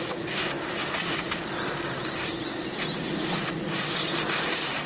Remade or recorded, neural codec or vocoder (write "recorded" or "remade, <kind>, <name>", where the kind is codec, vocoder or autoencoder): recorded